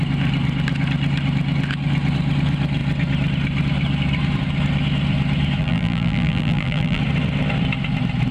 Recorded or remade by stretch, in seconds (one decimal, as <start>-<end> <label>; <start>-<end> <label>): 0.0-5.6 recorded; 5.6-7.0 remade; 7.0-8.3 recorded